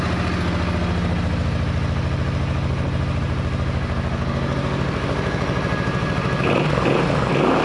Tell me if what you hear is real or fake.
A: real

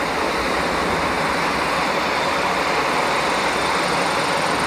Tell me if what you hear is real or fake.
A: real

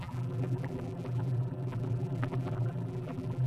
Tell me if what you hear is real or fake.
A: fake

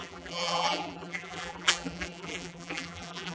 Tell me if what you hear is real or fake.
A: fake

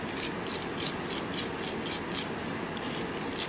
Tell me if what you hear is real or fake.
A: real